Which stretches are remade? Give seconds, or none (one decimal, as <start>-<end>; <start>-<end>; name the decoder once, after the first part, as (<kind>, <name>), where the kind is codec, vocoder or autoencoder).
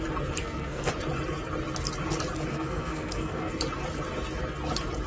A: 0.4-0.9 (codec, SNAC); 2.5-3.5